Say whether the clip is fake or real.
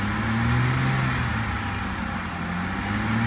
real